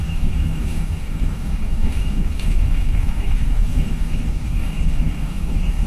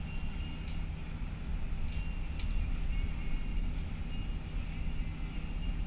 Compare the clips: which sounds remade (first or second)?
first